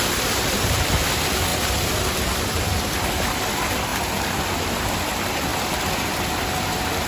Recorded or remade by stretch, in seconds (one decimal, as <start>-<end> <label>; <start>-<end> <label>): 0.0-7.1 remade